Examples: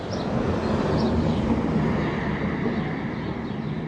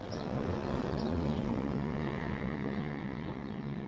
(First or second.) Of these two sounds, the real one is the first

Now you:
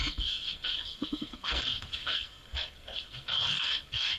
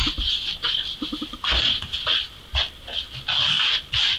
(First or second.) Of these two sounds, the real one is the second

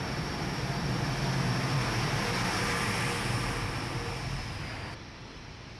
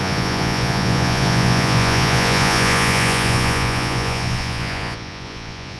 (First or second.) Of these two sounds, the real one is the first